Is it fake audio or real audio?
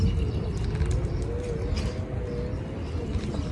real